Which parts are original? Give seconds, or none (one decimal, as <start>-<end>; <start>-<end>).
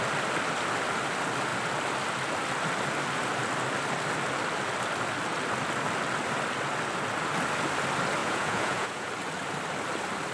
0.0-8.2; 9.1-10.3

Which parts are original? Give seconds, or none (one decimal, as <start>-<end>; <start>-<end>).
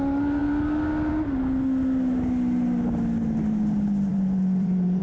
0.0-4.1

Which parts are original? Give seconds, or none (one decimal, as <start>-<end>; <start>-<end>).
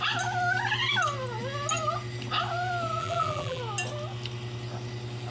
0.0-3.0; 3.6-5.3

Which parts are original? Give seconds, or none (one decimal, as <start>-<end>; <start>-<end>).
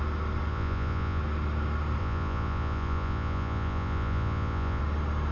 0.0-0.5; 1.2-2.0; 4.8-5.3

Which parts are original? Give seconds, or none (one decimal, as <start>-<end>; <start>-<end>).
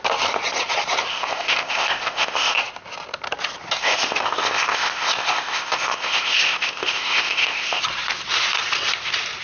0.0-1.1; 2.6-3.8; 7.8-9.4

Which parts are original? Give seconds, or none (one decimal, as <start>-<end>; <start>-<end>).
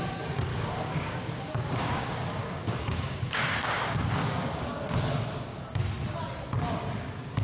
0.0-0.5; 4.7-7.4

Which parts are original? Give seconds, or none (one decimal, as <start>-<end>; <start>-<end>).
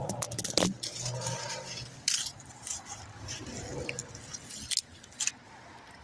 3.4-6.0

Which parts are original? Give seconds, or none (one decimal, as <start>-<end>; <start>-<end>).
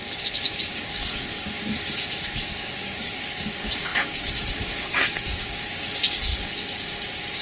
none